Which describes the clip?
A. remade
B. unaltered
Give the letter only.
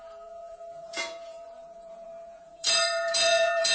A